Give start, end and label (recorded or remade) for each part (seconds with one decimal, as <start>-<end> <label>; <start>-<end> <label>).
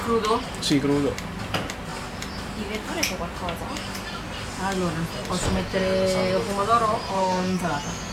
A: 0.0-7.1 recorded; 7.1-7.6 remade; 7.6-8.1 recorded